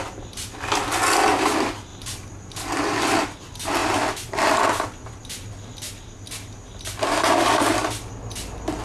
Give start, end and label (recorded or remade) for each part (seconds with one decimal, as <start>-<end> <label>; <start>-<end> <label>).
0.0-8.8 recorded